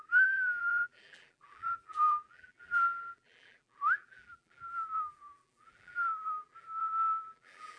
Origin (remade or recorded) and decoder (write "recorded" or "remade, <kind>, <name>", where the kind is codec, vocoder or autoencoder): remade, vocoder, BigVGAN v2